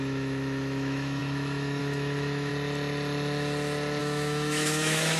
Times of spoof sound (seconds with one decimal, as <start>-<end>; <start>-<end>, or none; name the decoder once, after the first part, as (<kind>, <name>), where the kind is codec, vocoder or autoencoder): 0.0-2.5 (autoencoder, DAC-VAE); 4.0-5.2